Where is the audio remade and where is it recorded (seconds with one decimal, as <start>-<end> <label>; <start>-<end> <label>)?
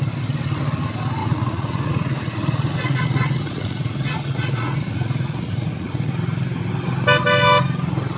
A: 0.0-1.2 recorded; 1.2-6.1 remade; 6.1-8.2 recorded